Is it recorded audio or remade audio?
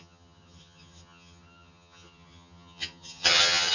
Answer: remade